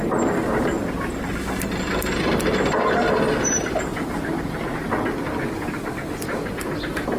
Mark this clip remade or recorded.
recorded